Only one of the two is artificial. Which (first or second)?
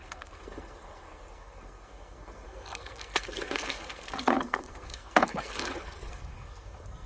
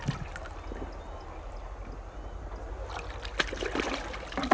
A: first